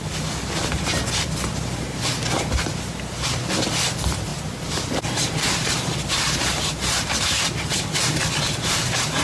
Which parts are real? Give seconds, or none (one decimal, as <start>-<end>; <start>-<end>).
0.0-9.2